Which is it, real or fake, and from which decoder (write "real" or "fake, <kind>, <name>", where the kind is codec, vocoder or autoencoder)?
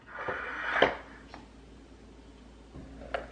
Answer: real